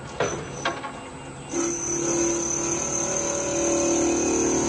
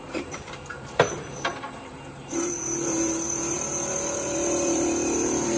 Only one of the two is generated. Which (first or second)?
second